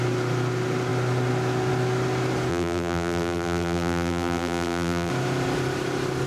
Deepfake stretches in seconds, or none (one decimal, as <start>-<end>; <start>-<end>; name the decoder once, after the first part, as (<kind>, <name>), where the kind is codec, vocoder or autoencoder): 2.5-5.1 (vocoder, BigVGAN v2)